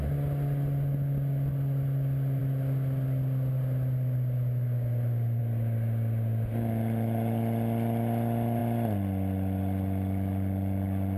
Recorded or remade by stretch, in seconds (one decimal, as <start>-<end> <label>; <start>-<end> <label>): 0.0-11.2 recorded